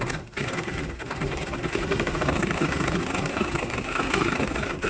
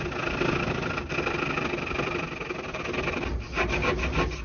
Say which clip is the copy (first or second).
first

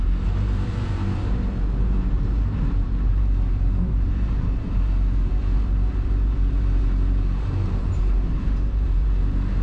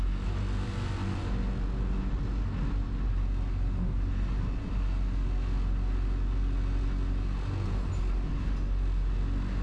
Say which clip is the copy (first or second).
first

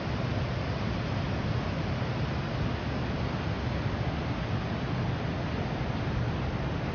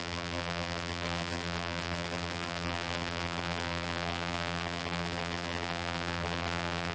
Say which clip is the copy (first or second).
second